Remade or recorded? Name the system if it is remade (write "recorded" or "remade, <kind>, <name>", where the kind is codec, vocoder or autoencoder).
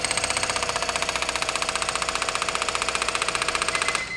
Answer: recorded